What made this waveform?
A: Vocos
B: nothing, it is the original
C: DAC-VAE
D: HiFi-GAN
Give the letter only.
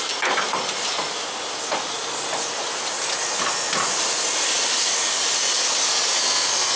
B